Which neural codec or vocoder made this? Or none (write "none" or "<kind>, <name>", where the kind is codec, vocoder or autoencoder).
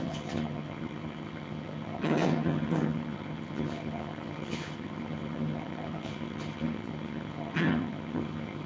vocoder, HiFi-GAN